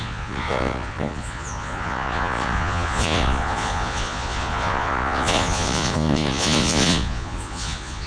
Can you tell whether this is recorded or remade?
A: remade